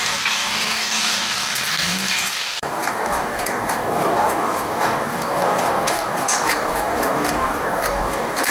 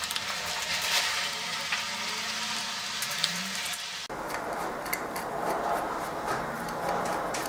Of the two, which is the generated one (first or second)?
first